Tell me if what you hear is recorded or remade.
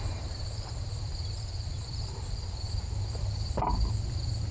remade